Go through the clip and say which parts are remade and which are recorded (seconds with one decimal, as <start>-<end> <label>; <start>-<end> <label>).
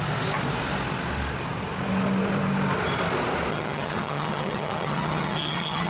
0.0-3.5 recorded; 3.5-5.9 remade